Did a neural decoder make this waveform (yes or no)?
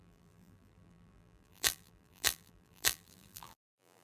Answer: yes